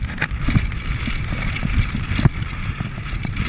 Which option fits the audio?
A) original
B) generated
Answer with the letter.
A